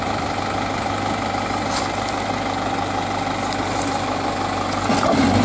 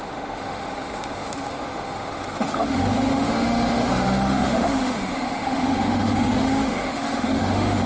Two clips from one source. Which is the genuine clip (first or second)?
first